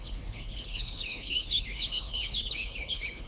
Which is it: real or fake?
fake